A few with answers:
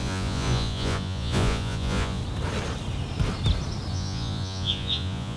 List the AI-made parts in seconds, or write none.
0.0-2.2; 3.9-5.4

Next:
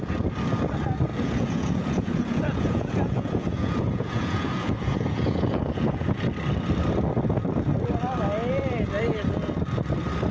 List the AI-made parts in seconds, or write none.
1.1-6.2

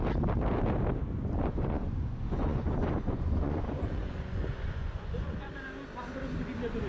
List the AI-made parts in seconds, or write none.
1.4-5.5

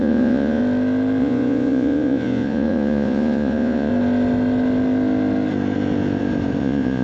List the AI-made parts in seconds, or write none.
0.0-0.6; 1.2-3.9; 6.6-7.0

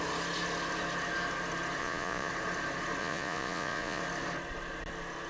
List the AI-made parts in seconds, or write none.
1.8-2.3; 3.0-4.0

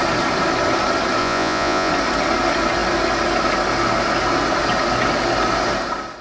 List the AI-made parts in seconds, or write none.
1.2-1.9